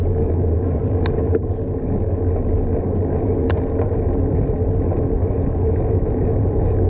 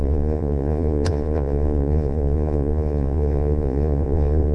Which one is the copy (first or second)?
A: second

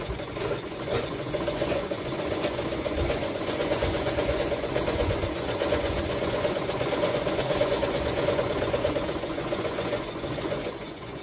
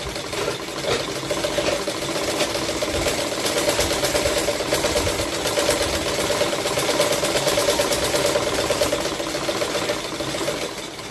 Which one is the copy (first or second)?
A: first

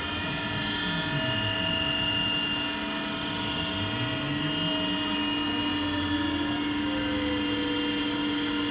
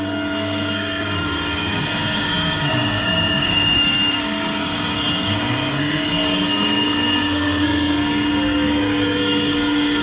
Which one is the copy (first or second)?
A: second